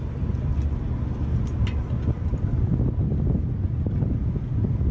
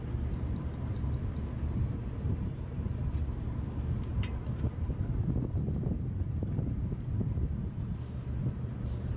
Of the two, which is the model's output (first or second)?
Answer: second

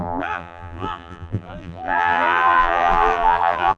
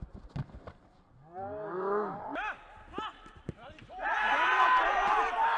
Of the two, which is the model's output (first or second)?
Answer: first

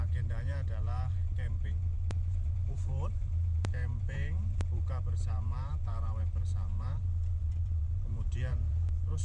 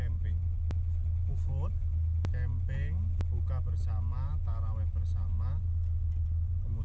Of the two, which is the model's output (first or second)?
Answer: first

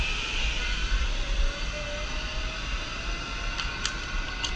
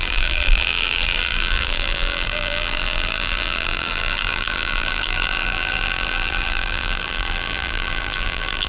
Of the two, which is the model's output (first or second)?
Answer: second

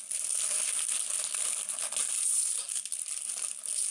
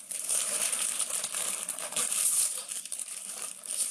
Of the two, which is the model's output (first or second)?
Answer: second